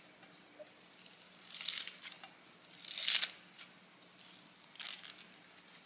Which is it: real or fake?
real